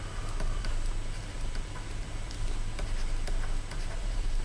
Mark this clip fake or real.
real